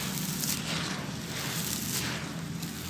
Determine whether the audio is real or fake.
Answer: real